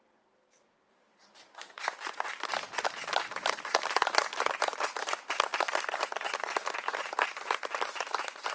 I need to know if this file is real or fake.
fake